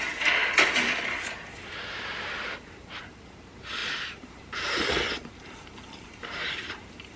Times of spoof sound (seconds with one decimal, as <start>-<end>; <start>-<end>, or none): 0.0-5.2; 6.0-7.2